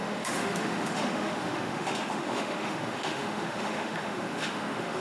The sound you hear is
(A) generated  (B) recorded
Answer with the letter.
A